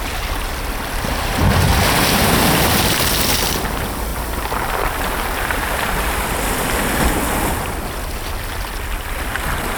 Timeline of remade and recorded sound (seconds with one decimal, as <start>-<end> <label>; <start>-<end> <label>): 0.0-9.8 recorded